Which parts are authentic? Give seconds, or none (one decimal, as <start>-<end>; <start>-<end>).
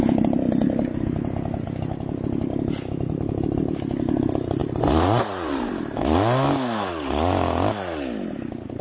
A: 0.0-4.6; 5.7-8.8